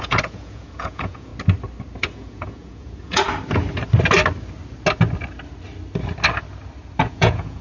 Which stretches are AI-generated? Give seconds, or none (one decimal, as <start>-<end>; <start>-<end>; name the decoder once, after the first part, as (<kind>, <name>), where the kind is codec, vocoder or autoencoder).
0.0-1.3 (vocoder, Vocos); 2.0-3.2; 7.0-7.6